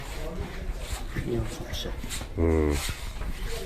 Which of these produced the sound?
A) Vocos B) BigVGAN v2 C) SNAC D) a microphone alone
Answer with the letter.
D